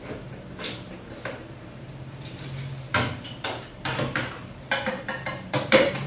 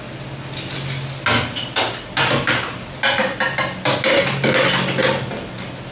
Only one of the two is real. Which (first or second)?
second